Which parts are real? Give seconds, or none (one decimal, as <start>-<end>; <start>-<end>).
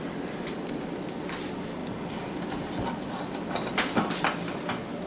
0.0-5.1